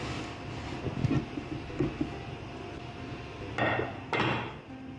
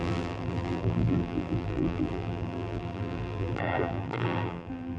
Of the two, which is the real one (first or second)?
first